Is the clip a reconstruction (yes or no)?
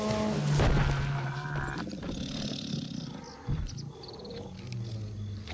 no